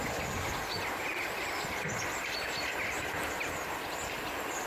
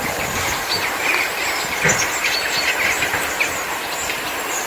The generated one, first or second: second